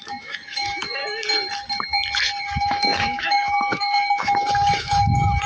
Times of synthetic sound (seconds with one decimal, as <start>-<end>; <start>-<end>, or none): 0.0-1.0; 2.4-5.5